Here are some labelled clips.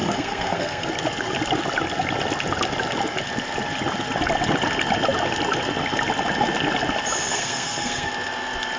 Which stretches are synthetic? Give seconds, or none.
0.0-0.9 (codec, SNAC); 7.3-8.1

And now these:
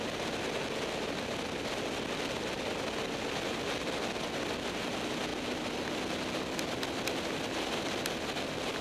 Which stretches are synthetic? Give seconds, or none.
none

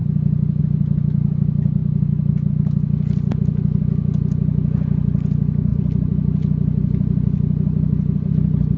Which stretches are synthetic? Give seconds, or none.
none

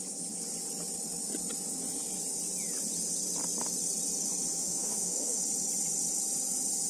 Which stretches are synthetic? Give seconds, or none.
4.6-5.4 (autoencoder, DAC-VAE)